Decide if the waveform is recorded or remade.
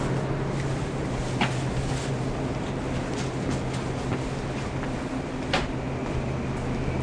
recorded